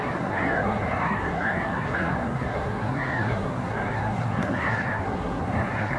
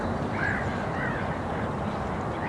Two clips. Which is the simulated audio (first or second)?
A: first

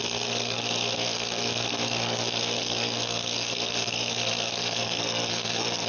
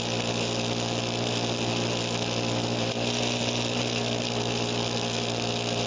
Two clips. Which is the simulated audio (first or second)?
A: first